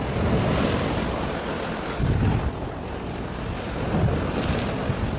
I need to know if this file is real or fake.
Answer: real